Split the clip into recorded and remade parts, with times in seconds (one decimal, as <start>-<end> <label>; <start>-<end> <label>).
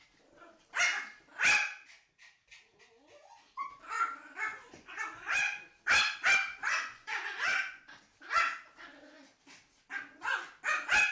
0.0-4.5 recorded; 4.5-5.6 remade; 5.6-6.5 recorded; 6.5-7.8 remade; 7.8-11.1 recorded